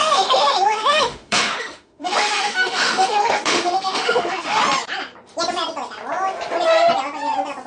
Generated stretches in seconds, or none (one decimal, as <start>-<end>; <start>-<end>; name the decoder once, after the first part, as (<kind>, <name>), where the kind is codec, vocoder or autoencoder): 0.0-4.6 (autoencoder, DAC-VAE)